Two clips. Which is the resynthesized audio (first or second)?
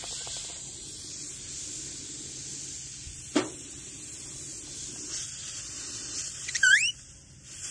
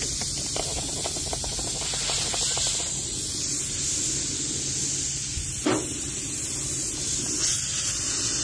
first